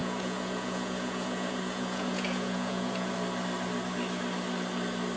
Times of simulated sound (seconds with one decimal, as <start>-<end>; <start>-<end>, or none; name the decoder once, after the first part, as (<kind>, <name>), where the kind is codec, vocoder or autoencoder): 0.0-3.1 (vocoder, Vocos)